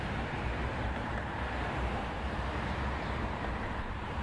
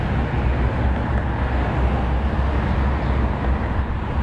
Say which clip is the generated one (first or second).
first